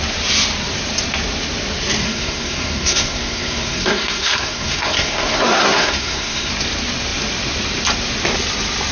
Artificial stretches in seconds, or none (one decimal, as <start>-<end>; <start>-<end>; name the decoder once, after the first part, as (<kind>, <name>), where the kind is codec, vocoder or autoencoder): 2.0-6.5 (codec, SNAC)